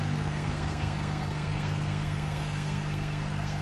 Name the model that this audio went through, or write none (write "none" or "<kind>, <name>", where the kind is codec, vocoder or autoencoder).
codec, SNAC